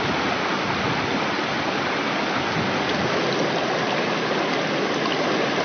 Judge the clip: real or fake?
real